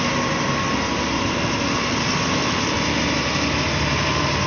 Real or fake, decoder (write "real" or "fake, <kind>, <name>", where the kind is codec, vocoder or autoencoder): real